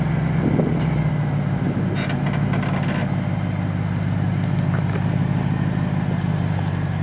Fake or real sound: real